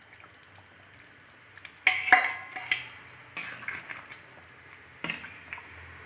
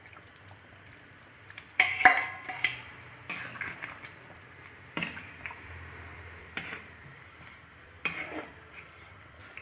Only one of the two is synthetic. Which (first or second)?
second